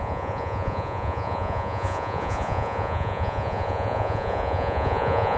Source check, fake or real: fake